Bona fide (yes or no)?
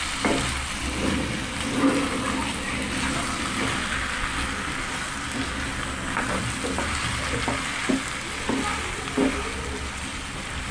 yes